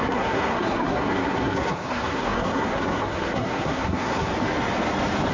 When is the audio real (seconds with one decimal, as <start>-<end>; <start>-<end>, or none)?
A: 4.3-5.3